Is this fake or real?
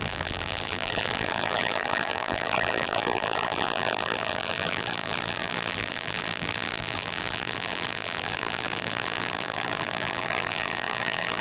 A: fake